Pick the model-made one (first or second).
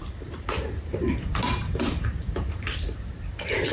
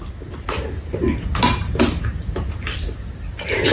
first